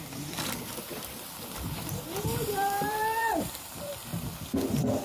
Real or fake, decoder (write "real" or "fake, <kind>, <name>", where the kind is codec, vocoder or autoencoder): fake, vocoder, BigVGAN v2